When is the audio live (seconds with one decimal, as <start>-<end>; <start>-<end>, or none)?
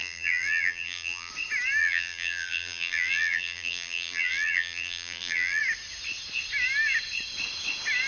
1.3-1.8; 5.6-8.1